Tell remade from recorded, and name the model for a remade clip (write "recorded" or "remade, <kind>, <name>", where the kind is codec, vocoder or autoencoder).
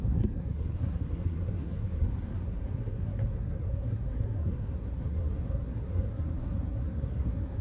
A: remade, codec, SNAC